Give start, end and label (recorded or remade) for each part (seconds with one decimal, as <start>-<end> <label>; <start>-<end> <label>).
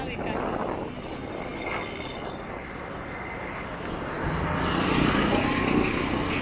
0.0-6.4 recorded